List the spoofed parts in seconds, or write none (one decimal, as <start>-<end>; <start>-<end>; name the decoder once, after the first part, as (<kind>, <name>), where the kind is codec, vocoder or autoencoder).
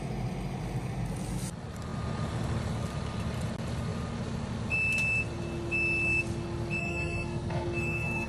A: 6.8-8.3 (codec, SNAC)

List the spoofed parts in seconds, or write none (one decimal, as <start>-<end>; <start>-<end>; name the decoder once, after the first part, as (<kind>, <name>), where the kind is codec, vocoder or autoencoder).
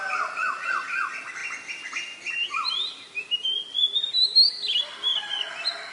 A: none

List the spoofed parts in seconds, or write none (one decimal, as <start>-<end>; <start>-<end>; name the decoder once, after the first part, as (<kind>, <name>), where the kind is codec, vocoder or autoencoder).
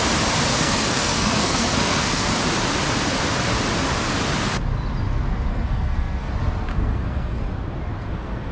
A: 0.5-2.3 (codec, SNAC); 5.5-6.3; 6.7-7.4; 8.0-8.5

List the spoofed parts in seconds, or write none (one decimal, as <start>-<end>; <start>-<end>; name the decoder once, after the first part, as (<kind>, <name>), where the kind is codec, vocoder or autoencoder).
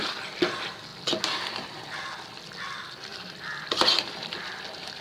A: 3.1-5.0 (vocoder, BigVGAN v2)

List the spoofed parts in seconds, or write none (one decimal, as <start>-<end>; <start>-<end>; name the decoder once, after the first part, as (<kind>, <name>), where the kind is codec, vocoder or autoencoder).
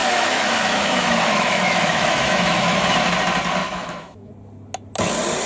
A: 0.0-3.0 (autoencoder, DAC-VAE); 3.6-4.3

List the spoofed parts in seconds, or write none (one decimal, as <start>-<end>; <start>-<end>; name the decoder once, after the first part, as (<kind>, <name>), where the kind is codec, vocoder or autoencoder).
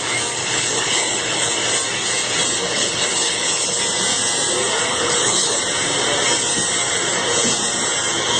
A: 0.4-1.5 (codec, HILCodec); 2.6-3.8; 4.9-5.6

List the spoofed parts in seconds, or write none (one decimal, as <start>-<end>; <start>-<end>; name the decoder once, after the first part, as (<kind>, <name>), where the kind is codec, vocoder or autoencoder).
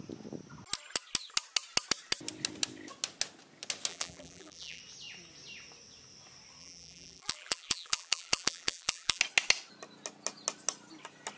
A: 3.9-4.8 (vocoder, BigVGAN v2); 6.6-9.2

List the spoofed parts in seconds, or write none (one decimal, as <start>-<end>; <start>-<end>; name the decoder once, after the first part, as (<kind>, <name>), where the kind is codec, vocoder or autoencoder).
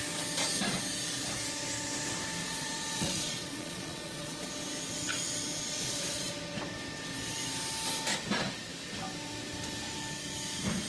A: 2.4-4.5 (vocoder, Vocos); 5.5-6.3